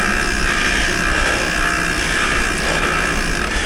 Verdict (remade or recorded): recorded